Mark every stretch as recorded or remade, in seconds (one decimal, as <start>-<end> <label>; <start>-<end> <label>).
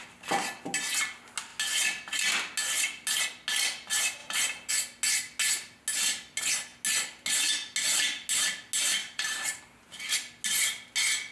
0.0-9.0 recorded; 9.0-9.6 remade; 9.6-11.3 recorded